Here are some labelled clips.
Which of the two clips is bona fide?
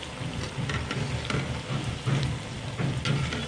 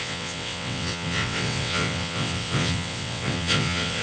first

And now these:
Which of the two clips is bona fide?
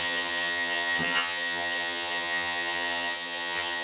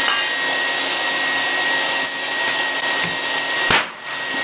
second